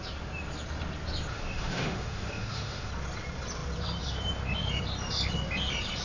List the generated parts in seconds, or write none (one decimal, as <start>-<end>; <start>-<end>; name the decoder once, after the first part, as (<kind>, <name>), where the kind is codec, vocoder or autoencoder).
1.3-2.9 (autoencoder, DAC-VAE)